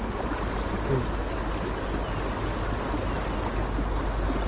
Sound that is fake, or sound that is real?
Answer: real